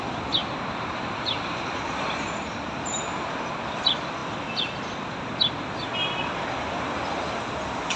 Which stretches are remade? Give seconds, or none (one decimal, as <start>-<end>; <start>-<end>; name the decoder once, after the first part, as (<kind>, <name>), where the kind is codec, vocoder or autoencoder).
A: 0.4-3.5 (vocoder, BigVGAN v2)